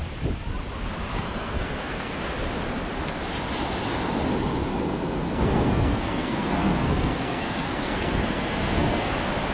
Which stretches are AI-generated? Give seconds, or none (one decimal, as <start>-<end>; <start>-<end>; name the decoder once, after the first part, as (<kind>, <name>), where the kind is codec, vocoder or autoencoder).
1.1-2.2 (codec, SNAC); 4.7-9.1